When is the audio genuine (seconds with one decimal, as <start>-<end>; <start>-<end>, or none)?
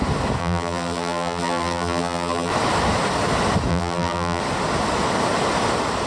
0.0-0.4; 2.5-3.7; 4.4-6.1